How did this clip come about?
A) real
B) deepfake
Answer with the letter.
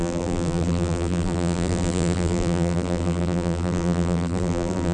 B